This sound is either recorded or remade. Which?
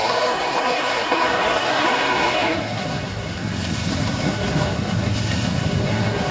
remade